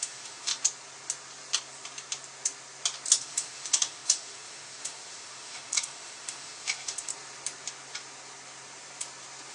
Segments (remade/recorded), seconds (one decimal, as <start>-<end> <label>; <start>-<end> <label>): 0.0-0.5 remade; 0.5-3.2 recorded; 3.2-7.1 remade; 7.1-9.5 recorded